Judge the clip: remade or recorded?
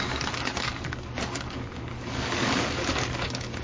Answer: remade